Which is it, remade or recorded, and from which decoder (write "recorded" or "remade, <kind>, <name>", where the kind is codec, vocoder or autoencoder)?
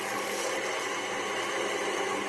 recorded